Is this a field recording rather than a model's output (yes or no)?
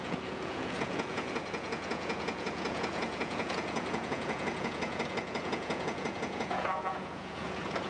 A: no